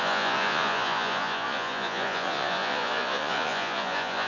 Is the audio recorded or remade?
remade